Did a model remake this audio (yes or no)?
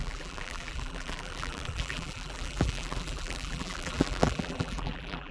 yes